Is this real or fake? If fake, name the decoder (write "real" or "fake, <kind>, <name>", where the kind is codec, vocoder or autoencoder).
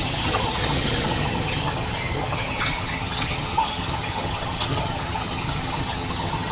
fake, vocoder, HiFi-GAN